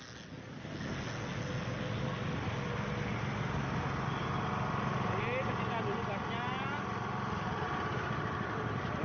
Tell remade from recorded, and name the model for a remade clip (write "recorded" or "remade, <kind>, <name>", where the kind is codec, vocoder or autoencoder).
recorded